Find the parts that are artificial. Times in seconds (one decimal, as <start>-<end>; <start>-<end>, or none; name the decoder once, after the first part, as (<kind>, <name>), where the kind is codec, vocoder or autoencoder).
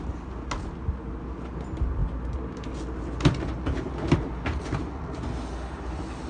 none